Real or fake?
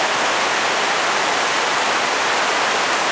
real